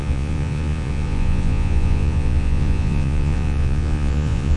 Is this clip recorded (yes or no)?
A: no